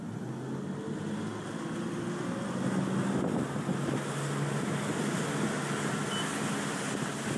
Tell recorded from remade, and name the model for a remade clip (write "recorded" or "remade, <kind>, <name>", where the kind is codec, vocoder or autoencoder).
recorded